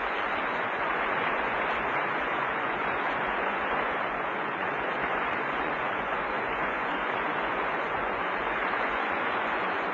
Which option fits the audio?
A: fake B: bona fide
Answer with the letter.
A